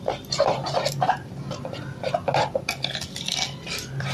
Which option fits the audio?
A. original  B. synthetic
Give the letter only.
A